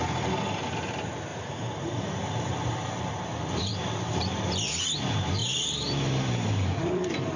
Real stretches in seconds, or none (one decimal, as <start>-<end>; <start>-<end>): 0.0-1.3; 3.0-3.7; 4.2-5.4